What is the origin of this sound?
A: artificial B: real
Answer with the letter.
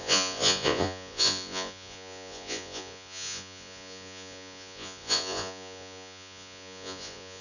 A